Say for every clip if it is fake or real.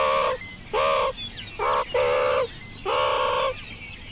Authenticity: real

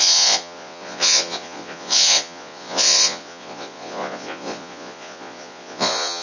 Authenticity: fake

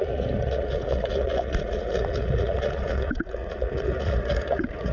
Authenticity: fake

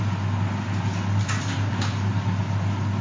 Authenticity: real